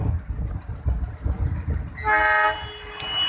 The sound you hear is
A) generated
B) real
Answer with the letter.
B